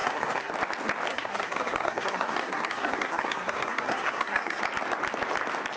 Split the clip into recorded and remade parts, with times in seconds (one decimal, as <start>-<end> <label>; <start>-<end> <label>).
0.0-0.5 remade; 0.5-1.1 recorded; 1.1-4.6 remade; 4.6-5.8 recorded